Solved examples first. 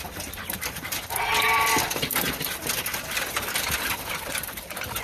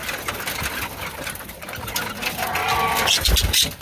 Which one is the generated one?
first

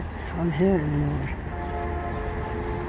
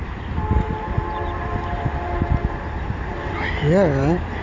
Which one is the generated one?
second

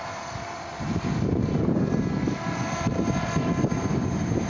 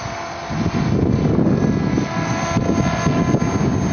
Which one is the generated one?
first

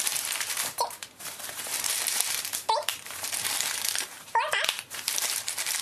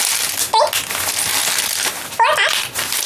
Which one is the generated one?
first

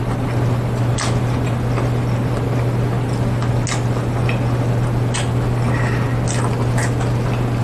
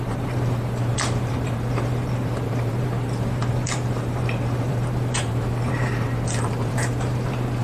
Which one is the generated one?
second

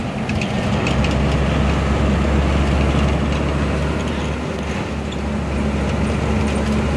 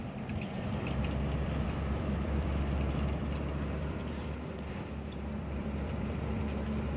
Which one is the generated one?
second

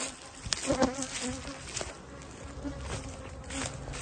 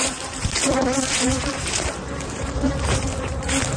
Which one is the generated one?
second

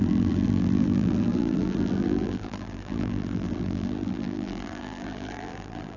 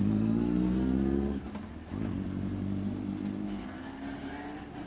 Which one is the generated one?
first